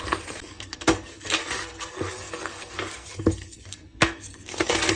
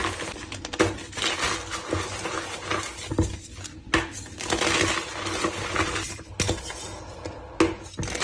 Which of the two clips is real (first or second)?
second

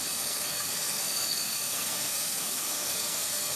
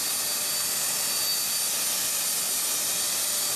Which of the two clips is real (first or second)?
second